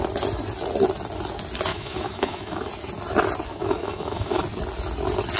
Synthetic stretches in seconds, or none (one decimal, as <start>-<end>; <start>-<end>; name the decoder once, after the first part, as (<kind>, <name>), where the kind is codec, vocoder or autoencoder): 1.7-2.7 (autoencoder, DAC-VAE); 3.5-4.4